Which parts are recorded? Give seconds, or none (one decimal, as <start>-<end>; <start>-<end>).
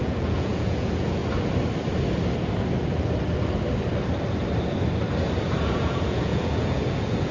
1.2-5.4